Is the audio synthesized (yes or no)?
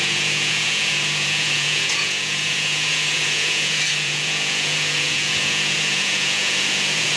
yes